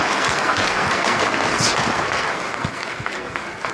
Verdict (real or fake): fake